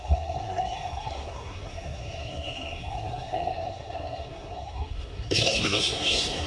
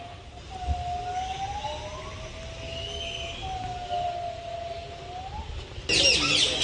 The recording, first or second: second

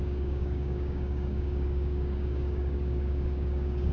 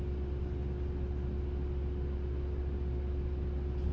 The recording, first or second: second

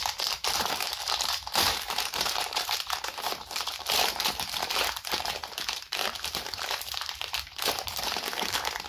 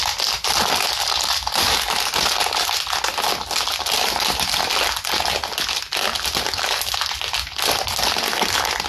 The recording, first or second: second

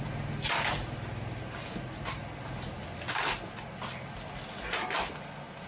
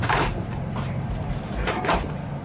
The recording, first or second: first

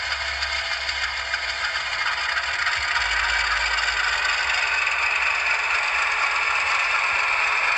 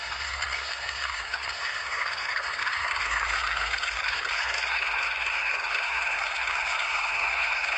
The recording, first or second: first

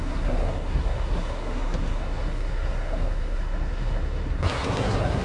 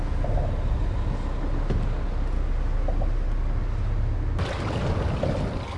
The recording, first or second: second